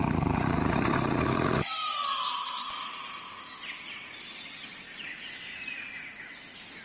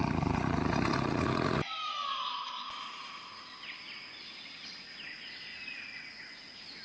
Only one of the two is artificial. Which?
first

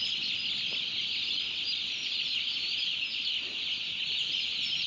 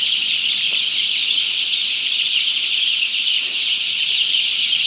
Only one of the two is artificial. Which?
second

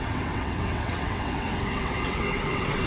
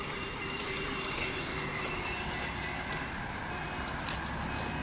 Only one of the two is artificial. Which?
first